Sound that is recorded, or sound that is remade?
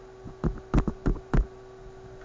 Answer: recorded